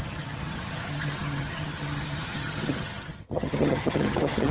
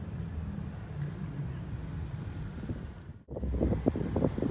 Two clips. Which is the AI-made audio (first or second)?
first